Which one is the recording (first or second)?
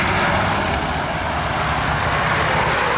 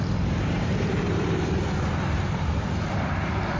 first